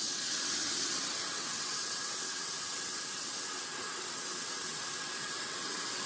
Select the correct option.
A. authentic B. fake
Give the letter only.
B